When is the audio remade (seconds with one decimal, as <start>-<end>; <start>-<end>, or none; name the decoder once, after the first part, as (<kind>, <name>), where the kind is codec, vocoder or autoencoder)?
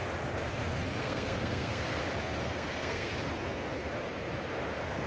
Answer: 1.0-2.0 (codec, SNAC); 2.4-3.1